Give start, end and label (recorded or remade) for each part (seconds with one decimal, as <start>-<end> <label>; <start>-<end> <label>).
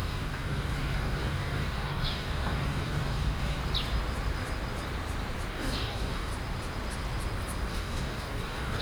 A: 0.0-3.6 remade; 3.6-5.5 recorded; 5.5-6.3 remade; 6.3-7.7 recorded; 7.7-8.8 remade